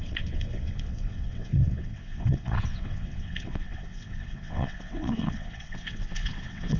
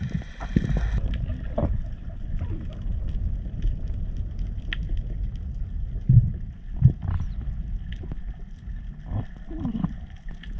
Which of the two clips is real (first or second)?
second